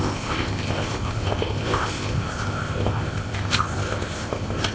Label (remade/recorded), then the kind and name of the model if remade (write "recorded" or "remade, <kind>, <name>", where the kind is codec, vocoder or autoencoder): remade, codec, ZipCodec